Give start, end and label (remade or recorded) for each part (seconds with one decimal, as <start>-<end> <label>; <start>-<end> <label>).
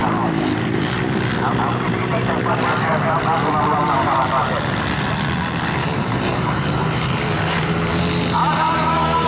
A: 0.0-1.0 remade; 1.0-3.8 recorded; 3.8-4.3 remade; 4.3-5.8 recorded; 5.8-8.0 remade; 8.0-9.3 recorded